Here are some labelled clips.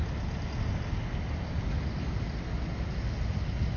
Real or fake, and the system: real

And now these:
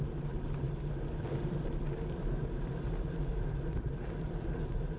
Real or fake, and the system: real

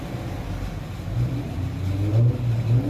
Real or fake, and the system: real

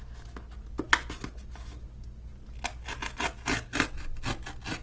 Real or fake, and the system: real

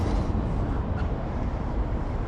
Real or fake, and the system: real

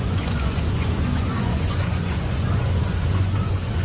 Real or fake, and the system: fake, vocoder, Vocos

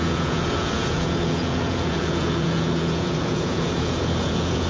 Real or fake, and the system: fake, vocoder, Vocos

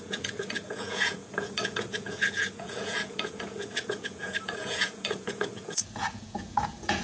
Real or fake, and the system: fake, vocoder, Vocos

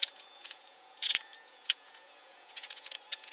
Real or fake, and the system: fake, vocoder, Vocos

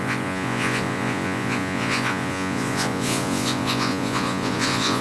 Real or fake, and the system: fake, vocoder, Vocos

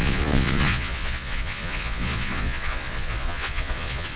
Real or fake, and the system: fake, vocoder, Vocos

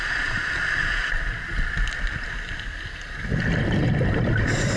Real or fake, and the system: real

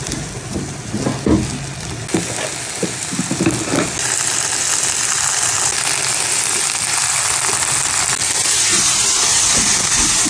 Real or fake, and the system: real